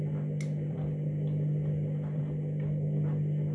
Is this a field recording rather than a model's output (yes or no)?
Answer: yes